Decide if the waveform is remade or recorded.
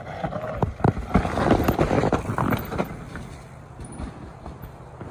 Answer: recorded